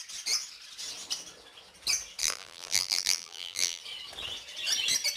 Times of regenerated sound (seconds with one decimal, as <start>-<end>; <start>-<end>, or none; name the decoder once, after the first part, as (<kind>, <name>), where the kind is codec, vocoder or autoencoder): 2.2-3.8 (vocoder, BigVGAN v2)